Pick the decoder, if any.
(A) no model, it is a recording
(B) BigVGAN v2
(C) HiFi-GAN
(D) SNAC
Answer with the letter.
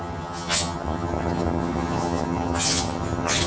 C